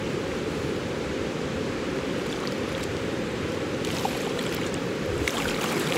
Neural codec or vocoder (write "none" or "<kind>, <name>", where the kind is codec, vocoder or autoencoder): vocoder, BigVGAN v2